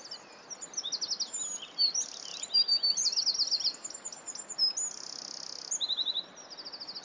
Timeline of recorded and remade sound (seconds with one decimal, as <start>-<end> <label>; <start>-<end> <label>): 0.0-7.0 recorded